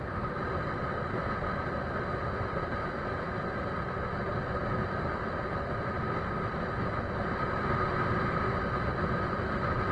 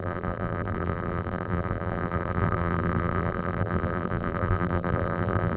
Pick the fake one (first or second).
second